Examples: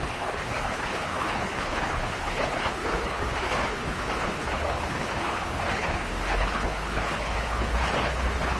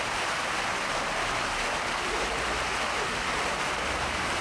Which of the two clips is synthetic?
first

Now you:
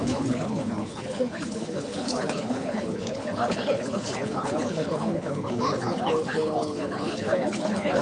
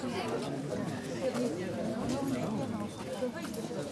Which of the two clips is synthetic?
first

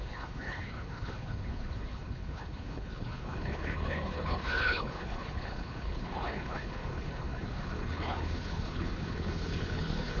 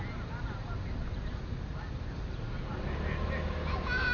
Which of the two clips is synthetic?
first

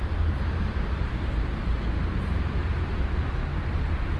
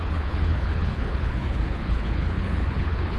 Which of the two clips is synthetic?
second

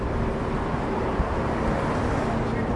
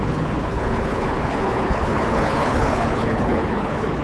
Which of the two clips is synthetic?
second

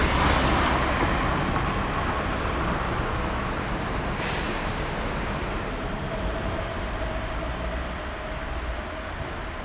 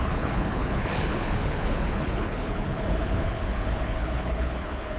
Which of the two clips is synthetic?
second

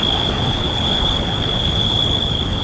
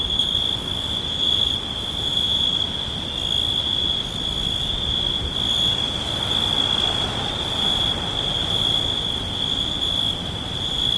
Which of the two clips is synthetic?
first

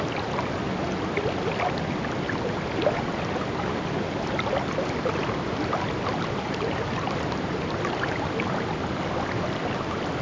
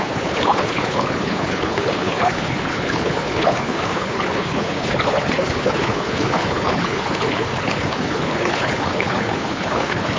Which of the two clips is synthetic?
second